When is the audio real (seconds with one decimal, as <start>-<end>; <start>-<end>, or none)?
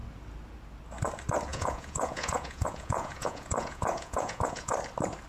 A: 0.0-1.5; 4.7-5.3